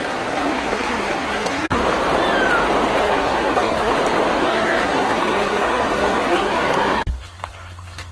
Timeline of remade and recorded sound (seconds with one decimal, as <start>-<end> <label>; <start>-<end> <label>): 0.0-1.8 remade; 1.8-3.0 recorded; 3.0-3.9 remade; 3.9-4.4 recorded; 4.4-8.1 remade